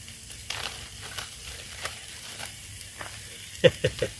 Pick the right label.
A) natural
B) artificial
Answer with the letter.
B